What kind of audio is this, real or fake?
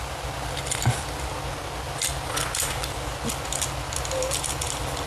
real